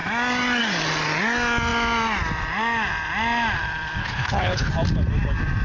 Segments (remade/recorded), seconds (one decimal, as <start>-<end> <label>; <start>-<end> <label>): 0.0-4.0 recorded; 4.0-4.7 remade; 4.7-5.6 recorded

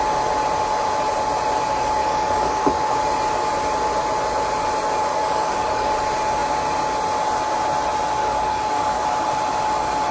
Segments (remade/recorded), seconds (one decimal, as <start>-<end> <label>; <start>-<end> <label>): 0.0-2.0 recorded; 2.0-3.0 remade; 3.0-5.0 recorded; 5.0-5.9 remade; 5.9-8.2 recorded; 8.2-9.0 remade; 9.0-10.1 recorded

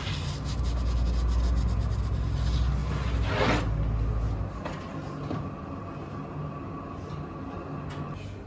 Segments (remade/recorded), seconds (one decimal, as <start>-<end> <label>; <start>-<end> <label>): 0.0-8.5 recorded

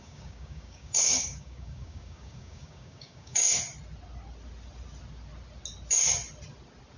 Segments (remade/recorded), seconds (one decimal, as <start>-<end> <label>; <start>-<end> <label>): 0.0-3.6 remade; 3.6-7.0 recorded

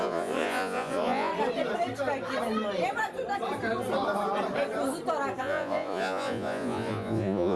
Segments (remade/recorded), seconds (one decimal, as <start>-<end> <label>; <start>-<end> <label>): 0.0-1.3 remade; 1.3-5.4 recorded; 5.4-7.6 remade

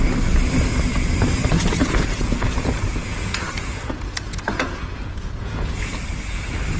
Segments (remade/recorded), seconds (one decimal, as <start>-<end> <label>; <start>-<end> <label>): 0.0-1.8 recorded; 1.8-5.9 remade; 5.9-6.8 recorded

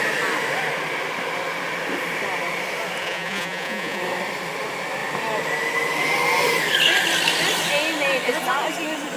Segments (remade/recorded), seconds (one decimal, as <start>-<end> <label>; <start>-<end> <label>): 0.0-3.0 recorded; 3.0-4.0 remade; 4.0-9.2 recorded